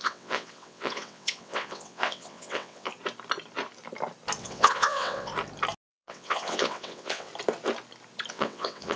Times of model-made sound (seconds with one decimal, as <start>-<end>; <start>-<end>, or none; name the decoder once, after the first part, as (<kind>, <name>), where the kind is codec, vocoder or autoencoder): 0.0-2.9 (vocoder, WaveNeXt); 4.4-5.3; 5.9-7.3; 8.3-9.0